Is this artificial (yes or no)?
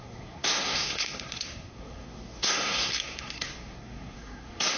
yes